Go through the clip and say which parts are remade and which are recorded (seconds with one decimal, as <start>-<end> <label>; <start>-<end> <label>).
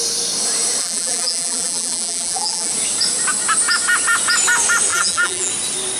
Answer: 0.0-0.8 recorded; 0.8-2.7 remade; 2.7-4.9 recorded; 4.9-5.5 remade; 5.5-6.0 recorded